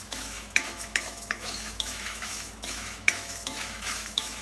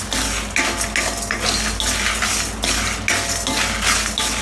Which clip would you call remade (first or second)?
first